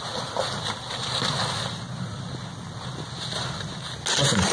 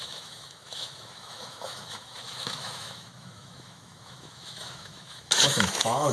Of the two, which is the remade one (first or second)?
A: second